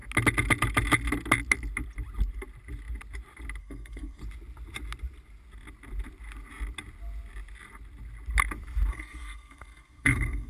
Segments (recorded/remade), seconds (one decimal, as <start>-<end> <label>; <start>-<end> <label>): 0.0-3.6 recorded; 3.6-4.2 remade; 4.2-8.9 recorded; 8.9-10.5 remade